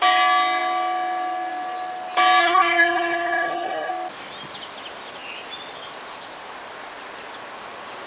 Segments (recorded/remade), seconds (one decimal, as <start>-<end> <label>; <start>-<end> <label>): 0.0-2.4 recorded; 2.4-3.9 remade; 3.9-8.1 recorded